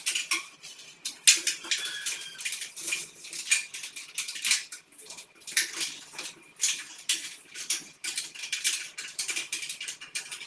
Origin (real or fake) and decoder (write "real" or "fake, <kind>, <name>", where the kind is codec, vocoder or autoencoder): real